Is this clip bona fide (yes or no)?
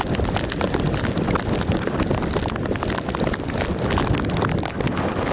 yes